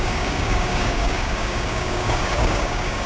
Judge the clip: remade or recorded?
remade